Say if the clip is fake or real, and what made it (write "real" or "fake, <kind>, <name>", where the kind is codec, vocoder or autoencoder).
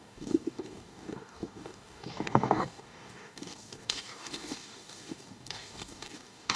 fake, codec, DAC